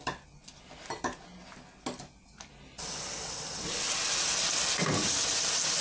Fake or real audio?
real